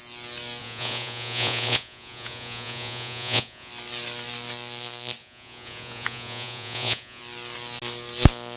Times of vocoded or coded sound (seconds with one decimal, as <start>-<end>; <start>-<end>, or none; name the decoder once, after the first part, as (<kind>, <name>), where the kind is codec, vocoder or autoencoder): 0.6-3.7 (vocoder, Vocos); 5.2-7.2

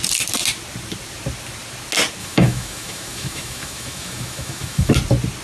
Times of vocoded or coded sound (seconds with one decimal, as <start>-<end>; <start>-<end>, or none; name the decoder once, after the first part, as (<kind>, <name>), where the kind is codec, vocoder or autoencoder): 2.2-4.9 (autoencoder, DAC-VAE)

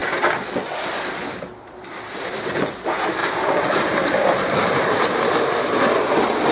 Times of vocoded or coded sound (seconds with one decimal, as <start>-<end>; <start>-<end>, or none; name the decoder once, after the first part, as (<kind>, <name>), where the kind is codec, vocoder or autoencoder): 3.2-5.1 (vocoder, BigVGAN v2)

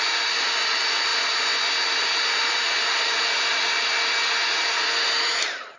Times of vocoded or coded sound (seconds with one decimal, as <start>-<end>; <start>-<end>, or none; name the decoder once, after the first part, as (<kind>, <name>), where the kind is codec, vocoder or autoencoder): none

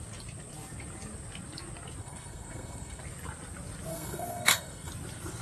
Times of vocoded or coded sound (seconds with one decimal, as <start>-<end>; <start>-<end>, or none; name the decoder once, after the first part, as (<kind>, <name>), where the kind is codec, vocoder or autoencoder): 2.0-3.0 (codec, SNAC); 3.9-4.9